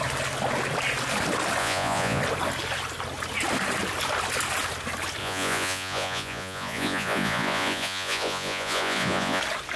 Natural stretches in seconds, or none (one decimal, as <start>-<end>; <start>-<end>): 0.0-1.6; 2.2-5.2; 9.4-9.8